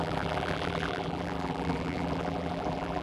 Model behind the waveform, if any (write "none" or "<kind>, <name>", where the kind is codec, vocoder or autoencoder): vocoder, BigVGAN v2